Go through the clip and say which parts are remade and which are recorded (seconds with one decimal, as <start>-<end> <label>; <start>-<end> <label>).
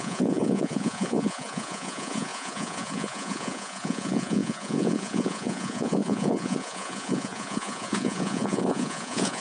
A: 0.0-9.4 remade